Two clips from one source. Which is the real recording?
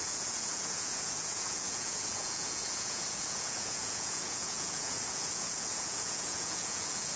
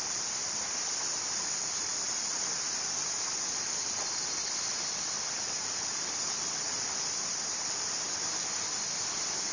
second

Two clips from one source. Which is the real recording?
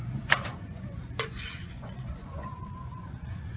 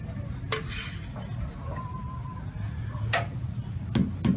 second